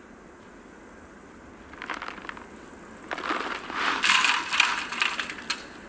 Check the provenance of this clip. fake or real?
real